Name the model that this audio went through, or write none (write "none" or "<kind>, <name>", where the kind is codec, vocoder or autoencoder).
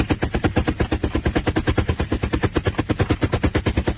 none